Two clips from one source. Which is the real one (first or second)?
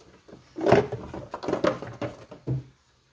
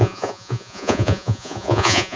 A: first